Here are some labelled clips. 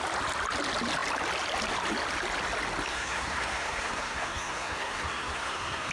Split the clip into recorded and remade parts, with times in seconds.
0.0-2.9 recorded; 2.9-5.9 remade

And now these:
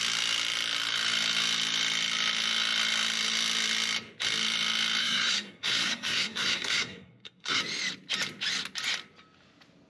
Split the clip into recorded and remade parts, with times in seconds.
0.0-5.0 recorded; 5.0-7.6 remade; 7.6-9.9 recorded

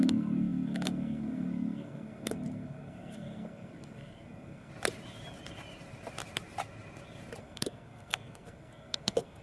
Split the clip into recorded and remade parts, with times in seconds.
0.0-4.7 remade; 4.7-7.4 recorded; 7.4-9.4 remade

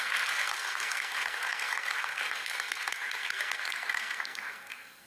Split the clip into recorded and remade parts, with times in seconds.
0.0-5.1 remade